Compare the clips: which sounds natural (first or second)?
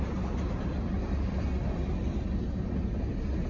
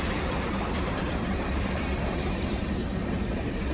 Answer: first